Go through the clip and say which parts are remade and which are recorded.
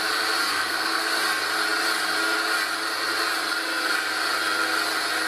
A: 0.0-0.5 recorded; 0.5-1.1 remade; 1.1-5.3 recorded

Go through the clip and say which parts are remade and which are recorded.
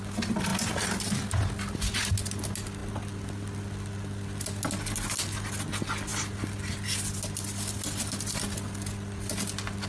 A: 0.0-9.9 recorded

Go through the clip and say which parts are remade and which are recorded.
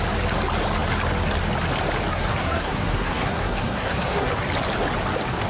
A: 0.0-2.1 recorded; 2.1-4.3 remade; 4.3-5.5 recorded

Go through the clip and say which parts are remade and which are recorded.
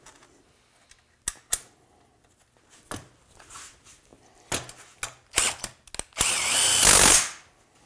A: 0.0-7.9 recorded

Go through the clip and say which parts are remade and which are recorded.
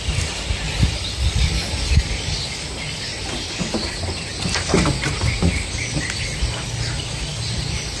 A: 0.0-8.0 recorded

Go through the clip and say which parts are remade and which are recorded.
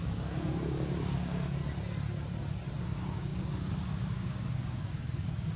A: 0.0-1.6 remade; 1.6-2.8 recorded; 2.8-5.6 remade